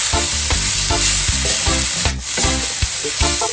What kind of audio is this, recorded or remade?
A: recorded